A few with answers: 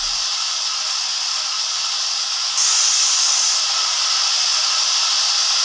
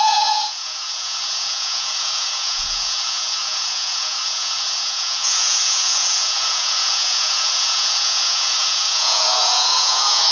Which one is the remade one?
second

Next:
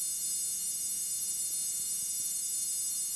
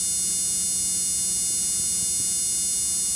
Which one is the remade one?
first